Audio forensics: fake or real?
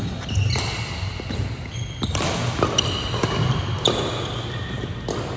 real